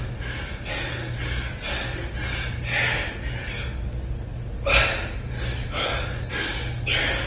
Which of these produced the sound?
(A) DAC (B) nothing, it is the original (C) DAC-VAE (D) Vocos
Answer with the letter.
B